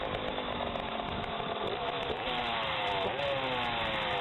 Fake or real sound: real